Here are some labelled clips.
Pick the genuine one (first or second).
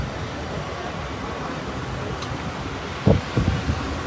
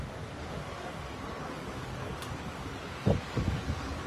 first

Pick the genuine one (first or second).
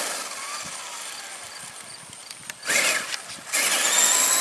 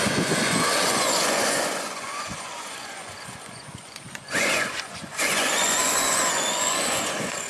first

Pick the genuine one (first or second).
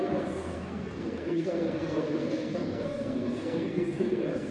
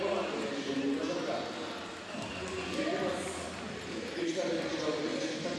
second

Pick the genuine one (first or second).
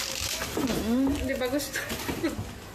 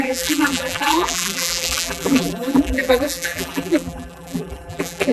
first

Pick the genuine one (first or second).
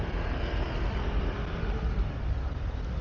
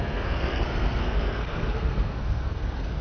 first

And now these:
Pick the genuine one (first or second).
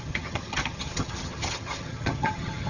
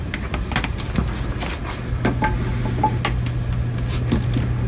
second